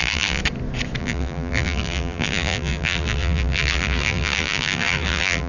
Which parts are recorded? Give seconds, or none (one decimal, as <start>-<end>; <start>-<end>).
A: 0.4-1.0